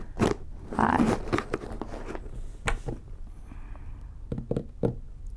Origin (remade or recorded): recorded